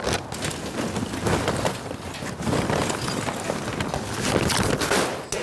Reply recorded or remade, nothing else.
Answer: recorded